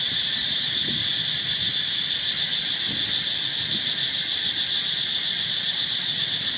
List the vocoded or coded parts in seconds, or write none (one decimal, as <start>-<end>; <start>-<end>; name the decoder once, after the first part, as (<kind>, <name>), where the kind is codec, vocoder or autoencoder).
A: 0.0-1.0 (vocoder, BigVGAN v2); 4.9-6.6

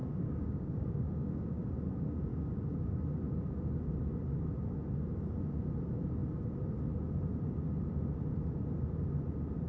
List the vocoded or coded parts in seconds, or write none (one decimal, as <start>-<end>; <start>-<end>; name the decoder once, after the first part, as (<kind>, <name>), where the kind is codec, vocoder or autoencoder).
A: 0.0-1.6 (codec, DAC); 2.3-3.0

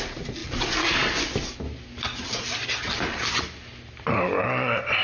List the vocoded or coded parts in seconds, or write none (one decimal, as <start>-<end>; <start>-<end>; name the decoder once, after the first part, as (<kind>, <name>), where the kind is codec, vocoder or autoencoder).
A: none

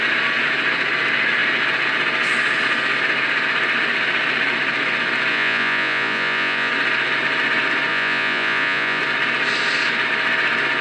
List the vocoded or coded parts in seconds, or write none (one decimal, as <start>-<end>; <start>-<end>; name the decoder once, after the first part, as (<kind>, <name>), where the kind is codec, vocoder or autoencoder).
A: 5.3-6.7 (vocoder, Vocos); 7.9-9.0

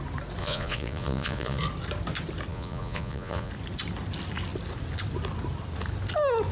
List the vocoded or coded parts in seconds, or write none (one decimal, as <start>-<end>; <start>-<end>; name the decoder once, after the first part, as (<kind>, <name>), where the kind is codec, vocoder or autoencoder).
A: 0.4-1.6 (vocoder, Vocos); 2.5-3.5

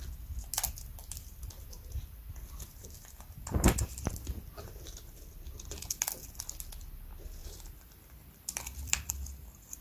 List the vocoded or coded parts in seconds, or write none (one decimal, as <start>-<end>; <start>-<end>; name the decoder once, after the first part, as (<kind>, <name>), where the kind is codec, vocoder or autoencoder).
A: 1.0-6.1 (vocoder, BigVGAN v2); 7.4-9.1

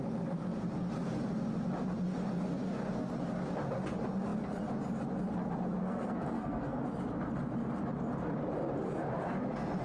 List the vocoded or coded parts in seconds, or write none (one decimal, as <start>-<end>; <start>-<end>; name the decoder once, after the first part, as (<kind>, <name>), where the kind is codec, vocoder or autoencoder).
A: 5.8-6.8 (codec, SNAC)

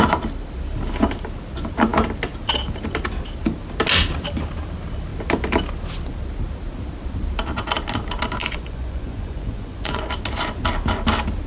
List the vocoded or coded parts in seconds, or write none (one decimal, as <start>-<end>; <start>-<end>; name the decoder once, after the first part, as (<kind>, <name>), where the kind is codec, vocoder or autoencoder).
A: 8.4-10.1 (vocoder, Vocos)